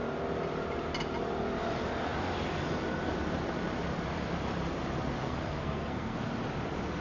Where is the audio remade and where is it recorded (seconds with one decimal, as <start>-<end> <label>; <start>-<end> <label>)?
0.0-5.2 recorded; 5.2-6.3 remade; 6.3-7.0 recorded